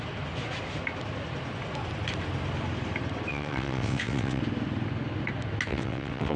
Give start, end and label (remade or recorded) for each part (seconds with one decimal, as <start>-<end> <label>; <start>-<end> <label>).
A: 0.0-3.3 recorded; 3.3-4.4 remade; 4.4-5.7 recorded; 5.7-6.4 remade